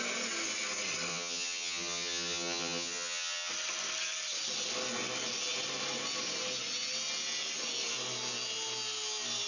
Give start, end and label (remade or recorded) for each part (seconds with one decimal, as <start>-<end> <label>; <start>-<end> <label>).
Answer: 0.0-1.1 recorded; 1.1-3.5 remade; 3.5-9.5 recorded